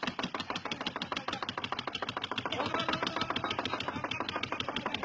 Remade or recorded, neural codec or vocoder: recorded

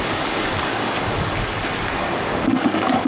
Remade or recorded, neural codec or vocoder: remade, codec, DAC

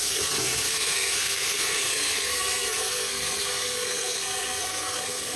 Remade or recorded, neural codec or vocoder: remade, codec, SNAC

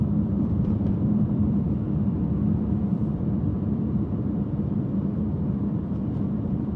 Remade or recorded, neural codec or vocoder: remade, vocoder, BigVGAN v2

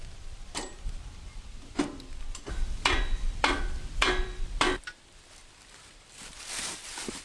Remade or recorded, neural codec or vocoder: remade, vocoder, BigVGAN v2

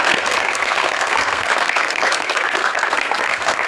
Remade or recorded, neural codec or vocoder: remade, codec, SNAC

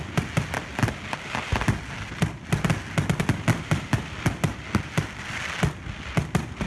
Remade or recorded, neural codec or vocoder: recorded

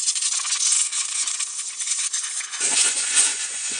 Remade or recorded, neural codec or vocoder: remade, vocoder, Vocos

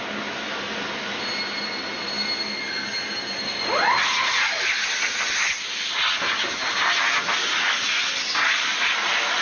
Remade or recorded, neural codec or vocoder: recorded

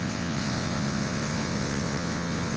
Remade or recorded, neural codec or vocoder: remade, vocoder, WaveNeXt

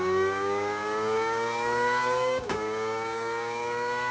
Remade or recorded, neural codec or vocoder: remade, codec, DAC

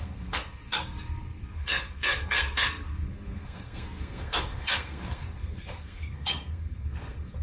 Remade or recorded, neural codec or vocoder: remade, codec, SNAC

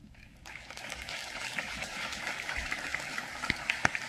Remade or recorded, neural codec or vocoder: remade, codec, DAC